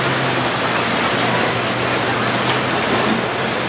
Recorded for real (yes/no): yes